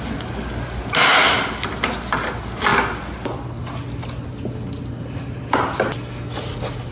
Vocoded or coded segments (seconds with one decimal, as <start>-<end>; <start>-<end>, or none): none